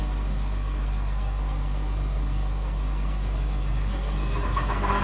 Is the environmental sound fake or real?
fake